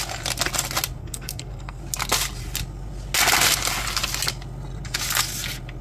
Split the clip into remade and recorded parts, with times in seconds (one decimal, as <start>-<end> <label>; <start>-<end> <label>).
0.0-1.0 recorded; 1.0-1.8 remade; 1.8-5.8 recorded